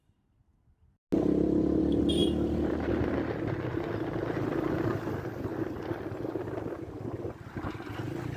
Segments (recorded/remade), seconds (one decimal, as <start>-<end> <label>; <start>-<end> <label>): 0.0-8.4 recorded